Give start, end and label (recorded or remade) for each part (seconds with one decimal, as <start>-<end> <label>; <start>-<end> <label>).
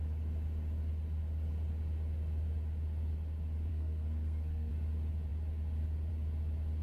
0.0-3.7 recorded; 3.7-4.7 remade; 4.7-6.8 recorded